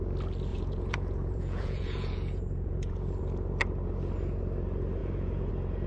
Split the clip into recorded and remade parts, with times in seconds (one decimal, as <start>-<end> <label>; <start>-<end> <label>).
0.0-0.5 recorded; 0.5-3.2 remade; 3.2-5.0 recorded; 5.0-5.5 remade; 5.5-5.9 recorded